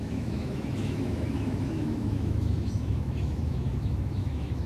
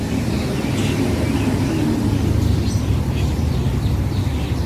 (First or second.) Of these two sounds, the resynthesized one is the first